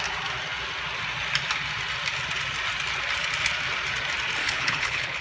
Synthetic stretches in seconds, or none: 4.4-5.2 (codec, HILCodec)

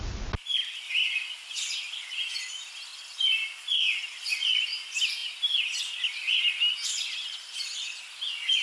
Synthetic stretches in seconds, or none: none

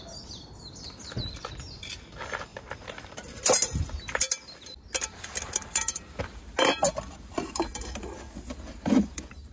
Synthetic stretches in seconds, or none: none

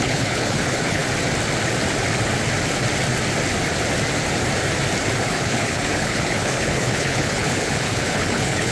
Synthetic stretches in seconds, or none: 0.0-1.0 (codec, HILCodec); 5.2-8.7

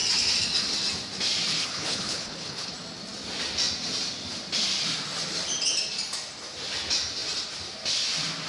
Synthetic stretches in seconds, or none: 1.5-2.7 (codec, HILCodec)

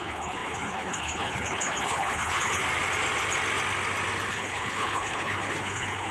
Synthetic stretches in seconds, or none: 0.0-2.6 (codec, HILCodec); 4.3-6.1